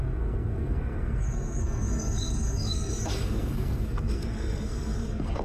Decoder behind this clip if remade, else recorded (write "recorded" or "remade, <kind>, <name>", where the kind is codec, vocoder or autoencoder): remade, codec, SNAC